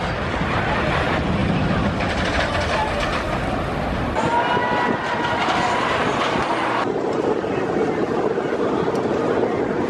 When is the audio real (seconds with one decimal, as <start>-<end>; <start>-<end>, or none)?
0.0-1.4; 2.1-9.9